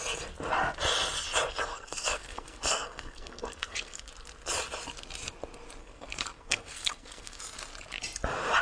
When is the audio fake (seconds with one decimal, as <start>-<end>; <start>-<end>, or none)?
1.7-4.1; 5.8-7.4